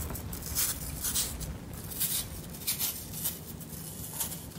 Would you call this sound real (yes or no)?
yes